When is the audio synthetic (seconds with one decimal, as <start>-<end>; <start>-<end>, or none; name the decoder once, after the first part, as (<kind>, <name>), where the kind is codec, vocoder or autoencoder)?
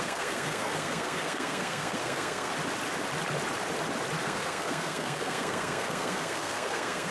0.0-2.5 (codec, SNAC); 4.2-7.1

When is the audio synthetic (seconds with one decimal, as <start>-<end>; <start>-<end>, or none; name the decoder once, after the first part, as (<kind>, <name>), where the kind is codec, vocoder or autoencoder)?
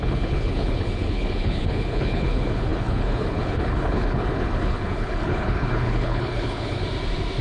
0.0-6.8 (codec, HILCodec)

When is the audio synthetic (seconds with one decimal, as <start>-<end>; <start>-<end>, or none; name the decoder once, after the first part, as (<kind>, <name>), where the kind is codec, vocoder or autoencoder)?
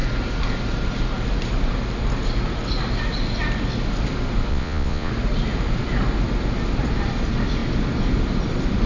4.5-5.1 (vocoder, Vocos)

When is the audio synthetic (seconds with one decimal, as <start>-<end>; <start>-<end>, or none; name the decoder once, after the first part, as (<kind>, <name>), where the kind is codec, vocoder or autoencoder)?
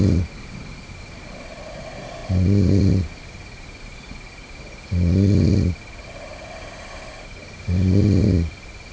none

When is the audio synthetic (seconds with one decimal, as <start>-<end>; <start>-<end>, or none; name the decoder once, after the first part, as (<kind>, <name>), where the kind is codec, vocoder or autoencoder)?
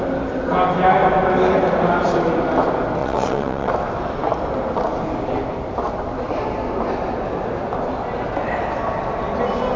3.0-3.7 (vocoder, WaveNeXt)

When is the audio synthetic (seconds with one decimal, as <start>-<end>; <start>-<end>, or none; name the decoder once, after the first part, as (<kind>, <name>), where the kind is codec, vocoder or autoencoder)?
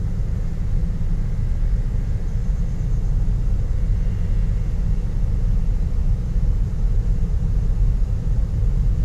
0.0-2.4 (vocoder, BigVGAN v2); 5.3-9.0